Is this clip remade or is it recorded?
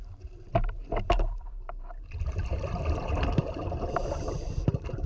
remade